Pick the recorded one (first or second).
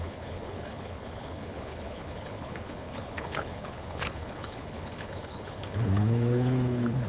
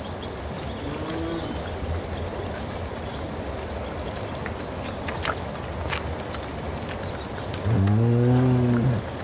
second